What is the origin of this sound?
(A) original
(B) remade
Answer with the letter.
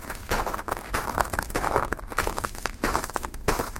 B